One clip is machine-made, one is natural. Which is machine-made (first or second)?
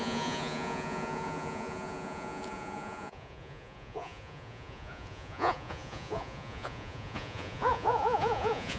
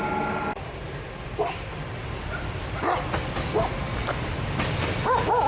first